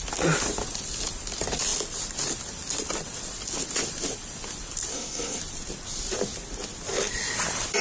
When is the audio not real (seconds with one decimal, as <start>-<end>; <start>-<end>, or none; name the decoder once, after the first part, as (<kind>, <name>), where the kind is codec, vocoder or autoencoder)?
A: 4.9-5.4 (codec, SNAC)